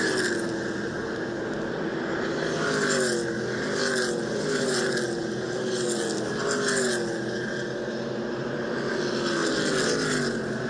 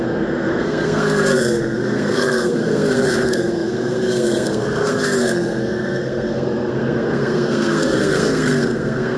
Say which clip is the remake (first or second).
second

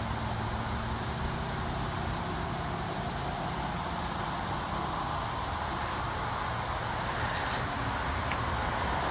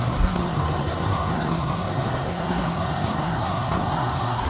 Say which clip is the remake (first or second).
second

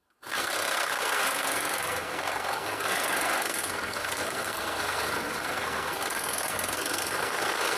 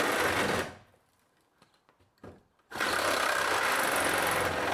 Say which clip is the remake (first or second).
first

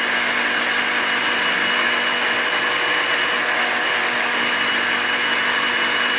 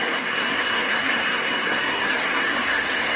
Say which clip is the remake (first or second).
second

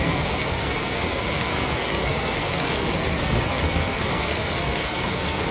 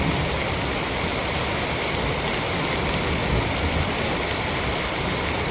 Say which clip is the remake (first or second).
first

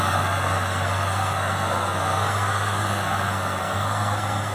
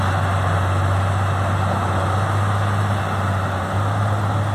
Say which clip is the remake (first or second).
first